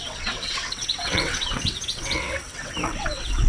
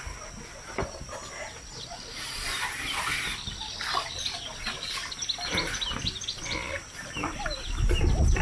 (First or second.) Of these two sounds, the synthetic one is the first